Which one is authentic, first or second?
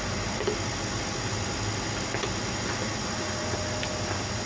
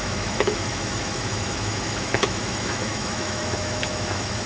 first